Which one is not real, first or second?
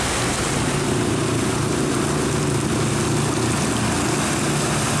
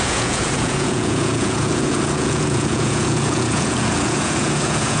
second